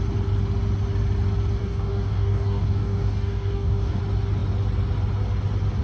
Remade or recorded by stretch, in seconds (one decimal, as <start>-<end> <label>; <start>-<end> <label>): 0.0-1.6 recorded; 1.6-4.0 remade; 4.0-5.8 recorded